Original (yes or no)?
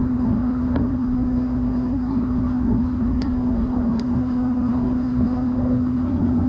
no